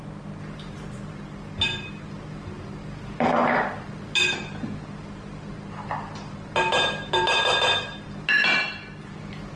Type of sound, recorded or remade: recorded